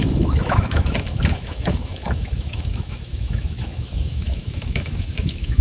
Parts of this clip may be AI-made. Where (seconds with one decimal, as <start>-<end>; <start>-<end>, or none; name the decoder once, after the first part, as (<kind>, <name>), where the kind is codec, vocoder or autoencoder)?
0.0-5.6 (autoencoder, DAC-VAE)